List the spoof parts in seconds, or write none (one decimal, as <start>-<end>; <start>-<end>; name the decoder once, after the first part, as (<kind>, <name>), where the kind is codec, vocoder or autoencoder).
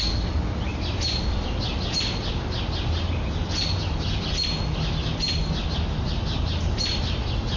none